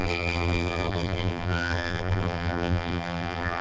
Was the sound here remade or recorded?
remade